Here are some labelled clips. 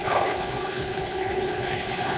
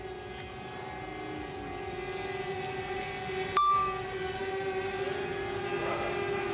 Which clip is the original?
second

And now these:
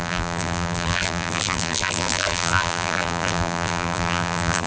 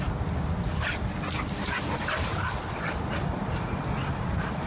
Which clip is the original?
second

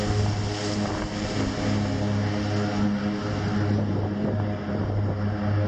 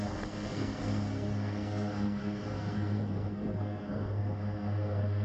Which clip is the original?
first